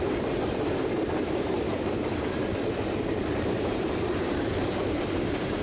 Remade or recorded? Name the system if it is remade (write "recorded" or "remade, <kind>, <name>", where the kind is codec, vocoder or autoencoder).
remade, vocoder, BigVGAN v2